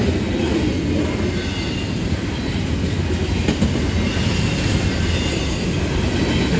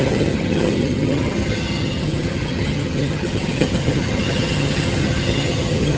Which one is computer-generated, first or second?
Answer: second